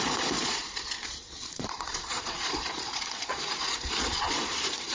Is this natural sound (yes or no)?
no